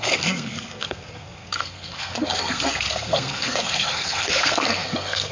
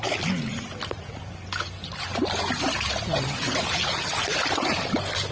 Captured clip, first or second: second